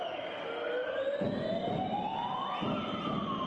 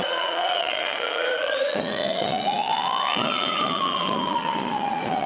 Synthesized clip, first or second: second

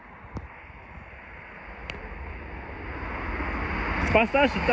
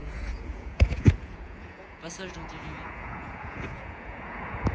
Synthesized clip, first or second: second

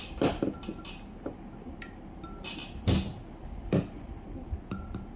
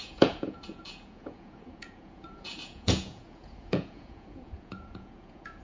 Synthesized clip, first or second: second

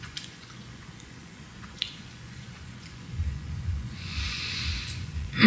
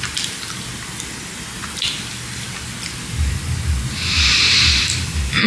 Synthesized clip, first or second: first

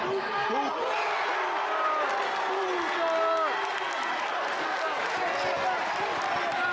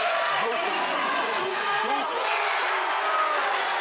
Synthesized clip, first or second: second